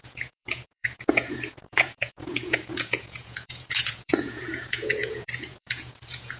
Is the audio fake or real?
fake